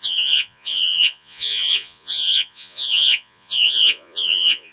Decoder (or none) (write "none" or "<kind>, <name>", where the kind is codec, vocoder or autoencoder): vocoder, Vocos